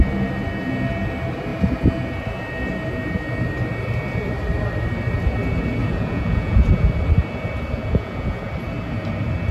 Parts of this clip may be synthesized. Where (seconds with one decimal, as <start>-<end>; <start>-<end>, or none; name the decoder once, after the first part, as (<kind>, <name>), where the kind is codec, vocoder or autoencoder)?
5.8-6.7 (vocoder, Vocos); 7.8-8.5